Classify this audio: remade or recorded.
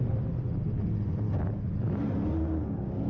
recorded